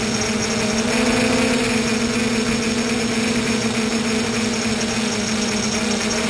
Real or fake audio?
real